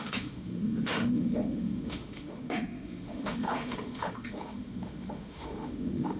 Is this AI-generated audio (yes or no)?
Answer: yes